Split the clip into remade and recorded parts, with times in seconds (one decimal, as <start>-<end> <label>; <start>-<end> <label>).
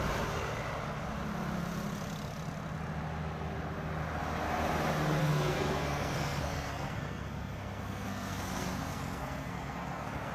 0.0-5.2 recorded; 5.2-10.3 remade